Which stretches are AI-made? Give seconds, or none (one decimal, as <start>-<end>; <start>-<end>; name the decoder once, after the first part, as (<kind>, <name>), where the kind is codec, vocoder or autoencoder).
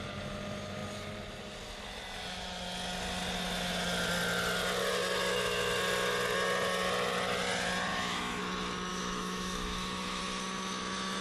7.9-8.4 (autoencoder, DAC-VAE); 8.9-10.2